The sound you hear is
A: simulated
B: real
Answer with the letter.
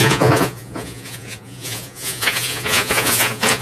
A